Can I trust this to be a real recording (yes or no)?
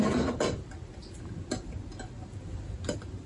yes